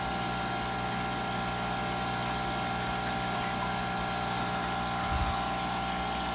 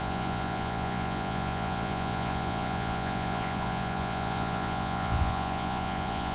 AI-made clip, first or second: second